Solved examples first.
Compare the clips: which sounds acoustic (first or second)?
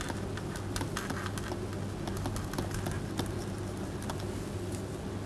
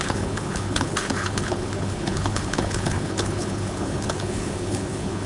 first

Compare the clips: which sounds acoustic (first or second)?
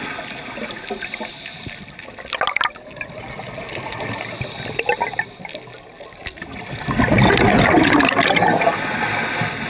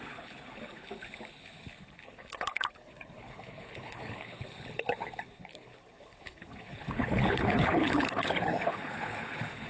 first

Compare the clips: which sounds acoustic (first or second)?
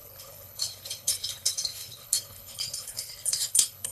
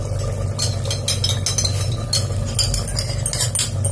second